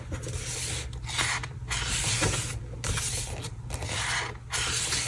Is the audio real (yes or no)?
yes